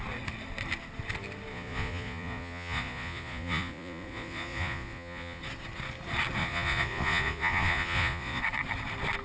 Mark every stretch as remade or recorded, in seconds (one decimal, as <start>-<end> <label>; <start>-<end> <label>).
0.0-1.5 recorded; 1.5-5.4 remade; 5.4-6.4 recorded; 6.4-8.4 remade; 8.4-9.2 recorded